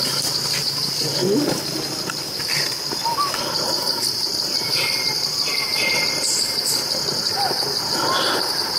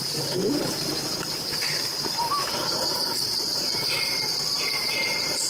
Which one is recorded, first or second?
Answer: first